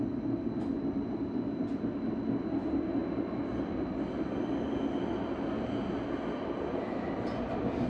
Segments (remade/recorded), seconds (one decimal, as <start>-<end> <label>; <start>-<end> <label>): 0.0-7.9 recorded